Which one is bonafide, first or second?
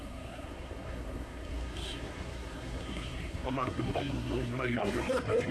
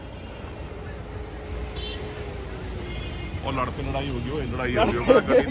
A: second